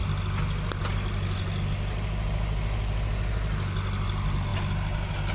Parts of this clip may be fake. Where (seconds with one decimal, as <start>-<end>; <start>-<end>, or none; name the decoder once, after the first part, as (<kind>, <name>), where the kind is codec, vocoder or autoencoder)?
none